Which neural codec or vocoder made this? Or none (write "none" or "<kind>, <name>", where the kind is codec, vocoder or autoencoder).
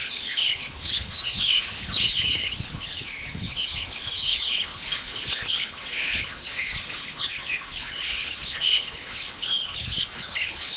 codec, HILCodec